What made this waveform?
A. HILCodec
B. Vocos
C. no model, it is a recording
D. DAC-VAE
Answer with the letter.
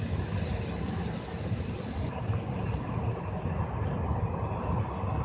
C